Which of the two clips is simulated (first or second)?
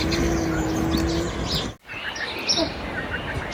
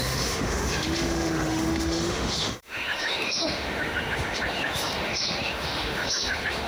second